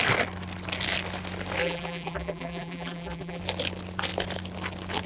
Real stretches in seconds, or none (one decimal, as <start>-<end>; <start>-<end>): 0.0-1.6; 3.4-5.1